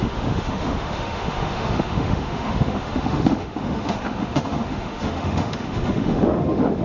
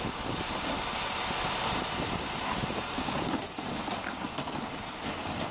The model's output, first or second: first